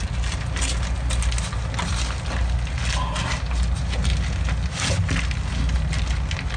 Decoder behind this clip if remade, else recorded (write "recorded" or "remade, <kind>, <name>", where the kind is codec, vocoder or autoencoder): recorded